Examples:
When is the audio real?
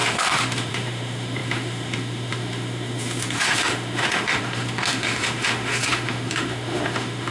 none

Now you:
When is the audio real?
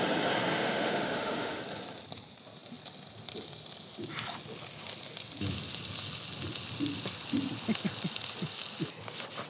0.0-0.5; 1.6-9.5